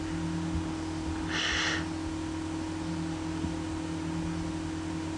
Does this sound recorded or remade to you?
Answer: recorded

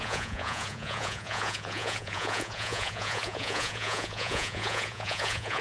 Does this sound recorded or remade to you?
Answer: remade